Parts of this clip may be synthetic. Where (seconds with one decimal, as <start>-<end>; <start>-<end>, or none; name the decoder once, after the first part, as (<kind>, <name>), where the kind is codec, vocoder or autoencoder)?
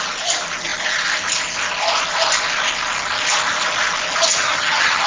4.3-5.1 (vocoder, HiFi-GAN)